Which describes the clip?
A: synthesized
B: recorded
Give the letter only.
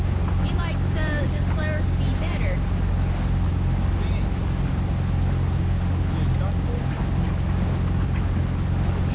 B